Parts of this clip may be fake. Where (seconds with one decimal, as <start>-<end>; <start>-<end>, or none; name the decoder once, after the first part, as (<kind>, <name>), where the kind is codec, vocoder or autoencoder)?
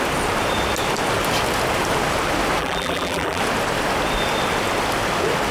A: 2.6-3.4 (vocoder, BigVGAN v2)